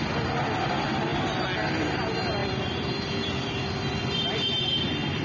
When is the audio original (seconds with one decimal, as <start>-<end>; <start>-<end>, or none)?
0.0-5.2